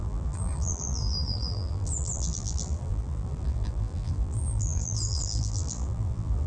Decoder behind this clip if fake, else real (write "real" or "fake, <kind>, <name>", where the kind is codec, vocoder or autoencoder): fake, vocoder, BigVGAN v2